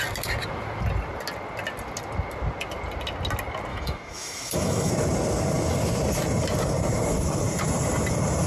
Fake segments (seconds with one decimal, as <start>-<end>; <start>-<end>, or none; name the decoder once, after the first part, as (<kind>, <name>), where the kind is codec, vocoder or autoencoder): 3.7-4.9 (autoencoder, DAC-VAE)